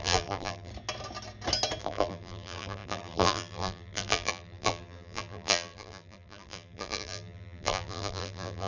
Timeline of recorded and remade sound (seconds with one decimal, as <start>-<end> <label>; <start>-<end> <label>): 0.0-0.7 remade; 0.7-1.8 recorded; 1.8-8.7 remade